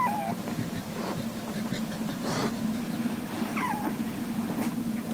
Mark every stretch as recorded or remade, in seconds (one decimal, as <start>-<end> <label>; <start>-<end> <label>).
0.0-2.4 remade; 2.4-2.9 recorded; 2.9-5.1 remade